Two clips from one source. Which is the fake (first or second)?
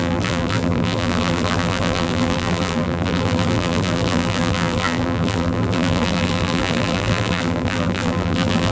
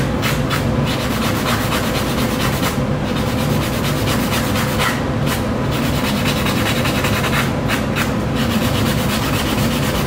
first